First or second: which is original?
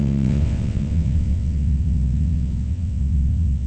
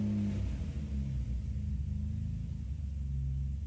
second